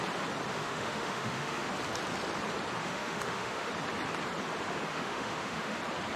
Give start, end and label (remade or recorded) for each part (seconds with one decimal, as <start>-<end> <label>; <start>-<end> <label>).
0.0-0.5 recorded; 0.5-1.7 remade; 1.7-2.8 recorded; 2.8-3.7 remade; 3.7-4.9 recorded; 4.9-5.8 remade; 5.8-6.2 recorded